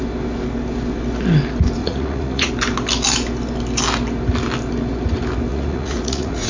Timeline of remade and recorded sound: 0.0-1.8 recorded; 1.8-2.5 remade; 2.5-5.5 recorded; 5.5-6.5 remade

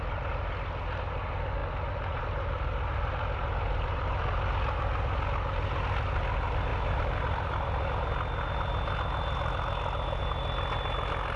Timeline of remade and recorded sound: 0.0-11.4 recorded

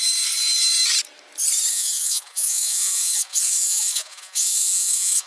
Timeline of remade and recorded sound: 0.0-1.7 recorded; 1.7-5.3 remade

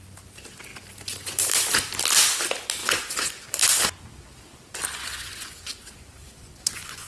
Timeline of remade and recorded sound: 0.0-2.8 recorded; 2.8-3.5 remade; 3.5-4.9 recorded; 4.9-7.1 remade

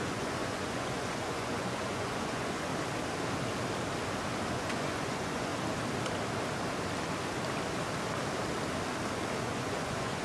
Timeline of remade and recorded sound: 0.0-2.7 remade; 2.7-4.5 recorded; 4.5-5.5 remade; 5.5-9.4 recorded; 9.4-10.2 remade